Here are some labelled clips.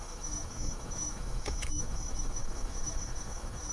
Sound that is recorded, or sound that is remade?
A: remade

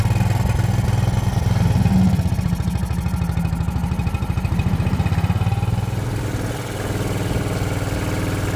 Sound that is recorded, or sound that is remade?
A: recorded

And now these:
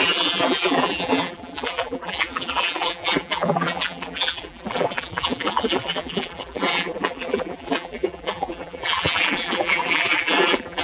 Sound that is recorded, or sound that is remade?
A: remade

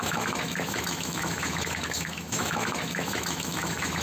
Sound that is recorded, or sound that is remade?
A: remade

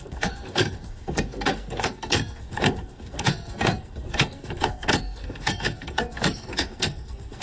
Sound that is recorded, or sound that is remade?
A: remade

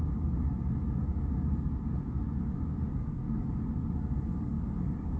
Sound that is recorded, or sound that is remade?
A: recorded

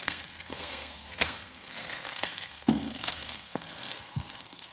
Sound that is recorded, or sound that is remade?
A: remade